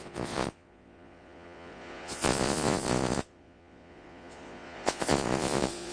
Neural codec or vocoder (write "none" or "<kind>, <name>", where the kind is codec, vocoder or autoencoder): vocoder, Vocos